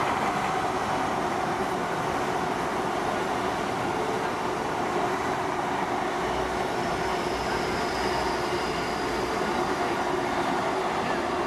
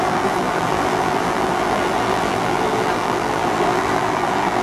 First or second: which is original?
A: first